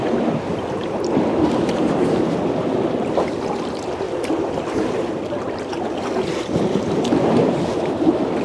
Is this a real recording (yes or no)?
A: yes